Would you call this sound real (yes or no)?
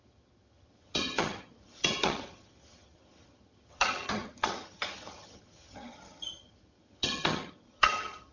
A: no